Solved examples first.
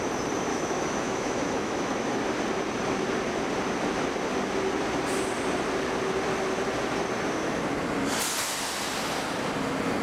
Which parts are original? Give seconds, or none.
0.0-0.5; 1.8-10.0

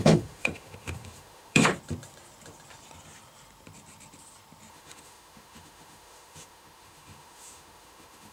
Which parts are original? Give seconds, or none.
1.7-4.7

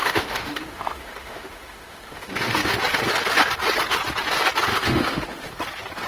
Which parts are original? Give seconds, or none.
2.8-4.7; 5.5-6.1